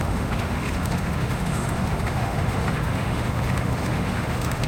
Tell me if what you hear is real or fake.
fake